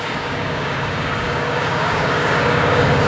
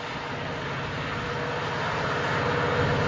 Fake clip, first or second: first